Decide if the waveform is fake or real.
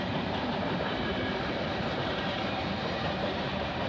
fake